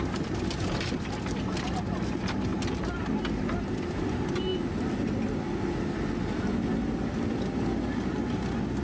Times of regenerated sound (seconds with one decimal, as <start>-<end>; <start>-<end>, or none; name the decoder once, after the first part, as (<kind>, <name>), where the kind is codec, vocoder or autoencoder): none